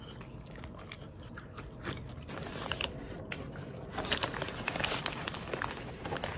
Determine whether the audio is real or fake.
real